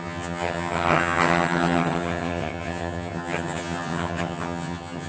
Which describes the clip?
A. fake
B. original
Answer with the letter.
A